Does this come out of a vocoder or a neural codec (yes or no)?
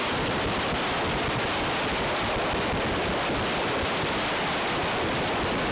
no